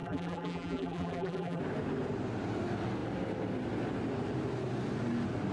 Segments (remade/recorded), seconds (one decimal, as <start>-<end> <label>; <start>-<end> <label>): 0.0-1.6 remade; 1.6-5.5 recorded